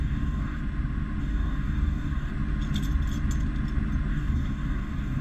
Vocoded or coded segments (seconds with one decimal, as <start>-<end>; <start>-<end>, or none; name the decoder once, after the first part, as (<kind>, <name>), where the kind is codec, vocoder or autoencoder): 0.0-0.6 (codec, DAC); 1.2-2.3; 4.1-5.2